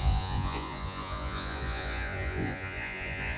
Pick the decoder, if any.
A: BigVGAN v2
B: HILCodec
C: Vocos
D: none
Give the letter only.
C